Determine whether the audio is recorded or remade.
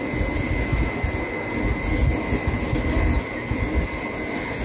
recorded